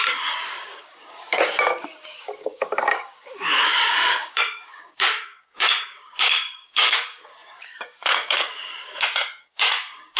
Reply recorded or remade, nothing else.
remade